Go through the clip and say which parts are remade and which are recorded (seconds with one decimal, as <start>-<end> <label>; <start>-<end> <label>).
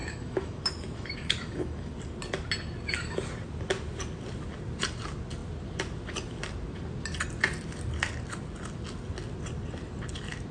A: 0.0-1.9 remade; 1.9-10.5 recorded